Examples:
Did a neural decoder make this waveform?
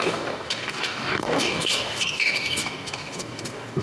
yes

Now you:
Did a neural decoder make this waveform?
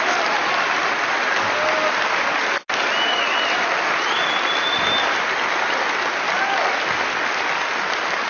no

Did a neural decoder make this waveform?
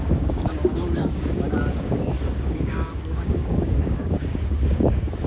yes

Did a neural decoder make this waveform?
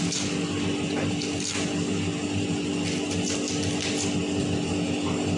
no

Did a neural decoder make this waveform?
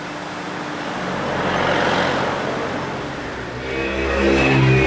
no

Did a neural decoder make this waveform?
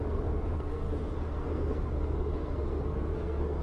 yes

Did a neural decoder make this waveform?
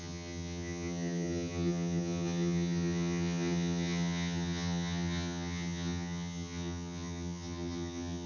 yes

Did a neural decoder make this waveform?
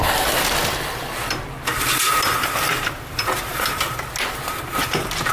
no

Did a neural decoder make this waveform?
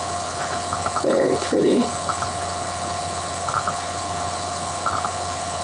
yes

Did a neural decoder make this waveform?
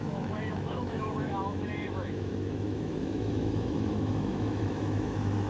yes